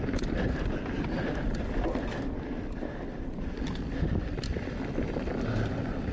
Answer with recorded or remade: recorded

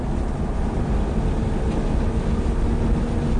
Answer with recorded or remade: recorded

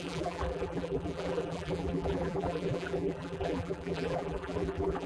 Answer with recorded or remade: remade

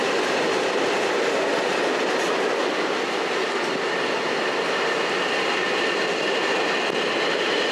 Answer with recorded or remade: recorded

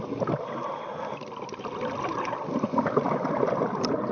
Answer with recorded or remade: recorded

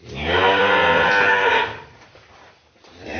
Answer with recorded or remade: remade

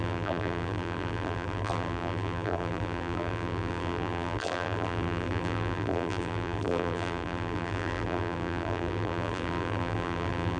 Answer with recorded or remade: remade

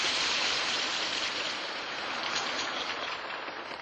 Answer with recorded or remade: remade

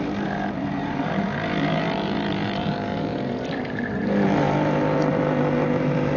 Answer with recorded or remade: remade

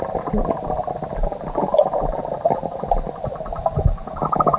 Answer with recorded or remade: recorded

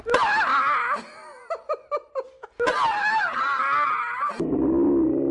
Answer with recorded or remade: recorded